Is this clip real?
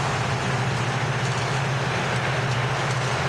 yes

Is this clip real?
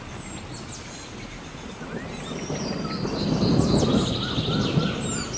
yes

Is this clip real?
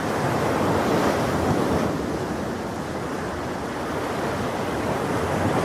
yes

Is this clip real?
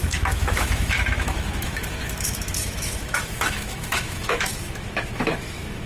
no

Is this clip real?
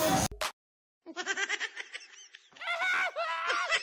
yes